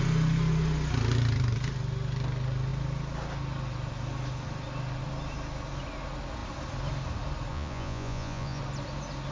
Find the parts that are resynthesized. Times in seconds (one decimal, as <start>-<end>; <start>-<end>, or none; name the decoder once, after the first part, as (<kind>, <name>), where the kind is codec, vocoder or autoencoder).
7.5-8.6 (vocoder, Vocos)

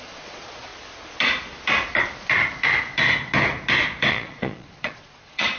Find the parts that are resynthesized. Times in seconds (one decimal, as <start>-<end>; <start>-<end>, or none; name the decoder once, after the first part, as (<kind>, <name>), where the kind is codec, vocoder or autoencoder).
0.0-0.7 (vocoder, Vocos); 4.1-5.6

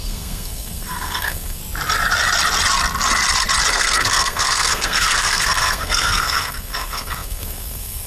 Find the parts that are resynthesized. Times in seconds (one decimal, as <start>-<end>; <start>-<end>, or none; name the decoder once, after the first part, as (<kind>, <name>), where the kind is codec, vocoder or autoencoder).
0.0-1.6 (codec, SNAC); 3.7-8.1

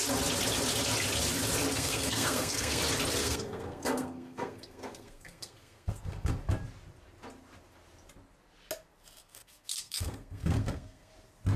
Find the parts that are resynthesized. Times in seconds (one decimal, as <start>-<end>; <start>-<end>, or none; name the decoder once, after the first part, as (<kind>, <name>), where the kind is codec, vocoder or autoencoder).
1.7-2.8 (codec, SNAC); 3.2-6.3; 9.2-11.1